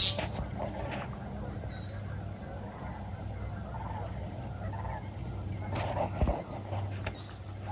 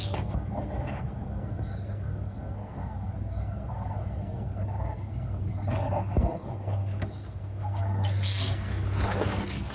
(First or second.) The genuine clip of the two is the first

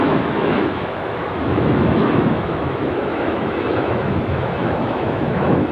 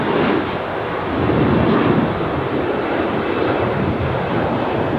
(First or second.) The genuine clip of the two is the second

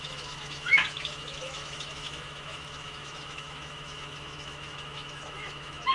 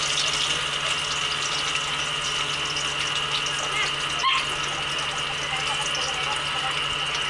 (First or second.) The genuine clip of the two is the second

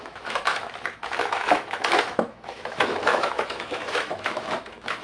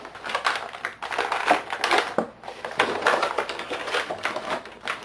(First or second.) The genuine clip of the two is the second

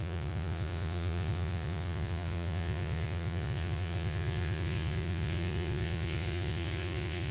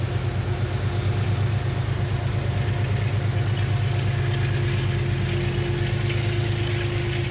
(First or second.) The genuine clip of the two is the second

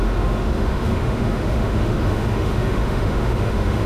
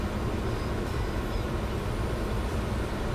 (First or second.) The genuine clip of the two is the second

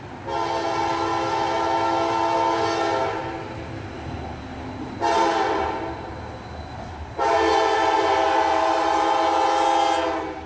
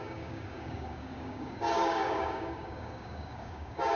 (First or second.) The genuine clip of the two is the first